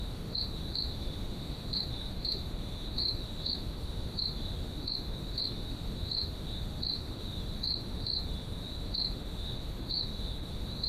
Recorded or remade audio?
remade